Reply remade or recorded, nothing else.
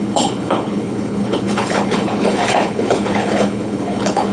remade